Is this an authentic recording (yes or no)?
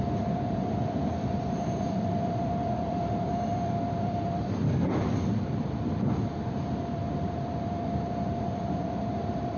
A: no